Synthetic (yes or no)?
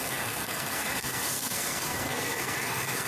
yes